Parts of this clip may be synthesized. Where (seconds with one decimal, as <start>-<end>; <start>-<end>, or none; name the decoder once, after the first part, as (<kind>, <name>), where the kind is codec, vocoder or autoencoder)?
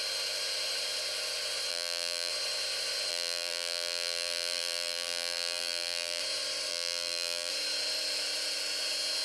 1.7-2.3 (vocoder, BigVGAN v2); 3.1-6.2; 6.7-7.5